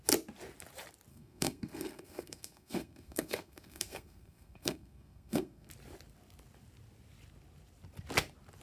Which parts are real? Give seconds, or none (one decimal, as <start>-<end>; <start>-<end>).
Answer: 0.0-1.1; 5.7-8.6